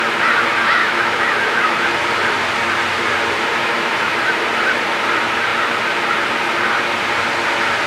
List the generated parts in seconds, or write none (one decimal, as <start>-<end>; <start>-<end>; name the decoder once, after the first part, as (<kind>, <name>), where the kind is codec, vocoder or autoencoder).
0.8-1.8 (autoencoder, DAC-VAE); 3.6-4.2